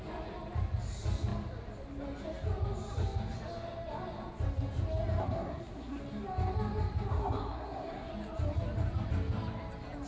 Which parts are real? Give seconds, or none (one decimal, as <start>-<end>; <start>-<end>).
0.0-5.2; 6.0-7.1; 8.1-10.1